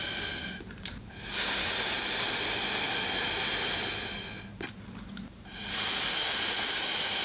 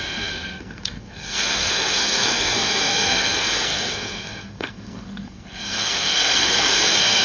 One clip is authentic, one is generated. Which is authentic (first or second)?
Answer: first